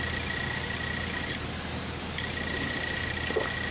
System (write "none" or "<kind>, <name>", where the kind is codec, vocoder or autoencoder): none